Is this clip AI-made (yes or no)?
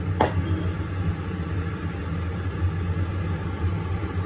no